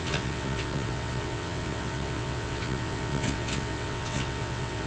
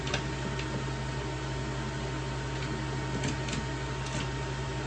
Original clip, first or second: second